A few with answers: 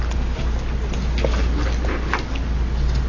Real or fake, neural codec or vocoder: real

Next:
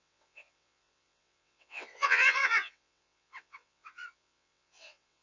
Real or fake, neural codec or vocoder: fake, vocoder, WaveNeXt